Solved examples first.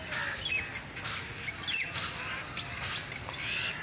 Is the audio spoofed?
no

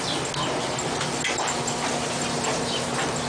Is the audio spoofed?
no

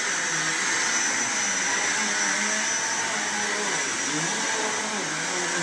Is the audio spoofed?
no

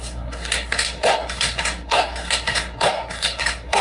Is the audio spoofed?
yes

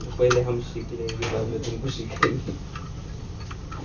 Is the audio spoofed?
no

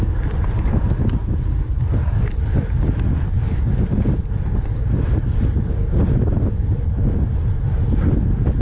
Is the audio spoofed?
no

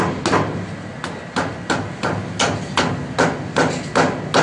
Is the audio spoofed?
no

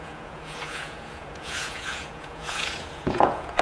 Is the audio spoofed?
yes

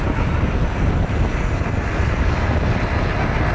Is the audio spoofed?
no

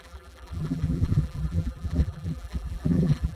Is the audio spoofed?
yes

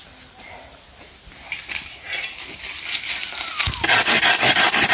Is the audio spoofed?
no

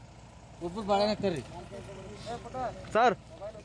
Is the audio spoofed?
no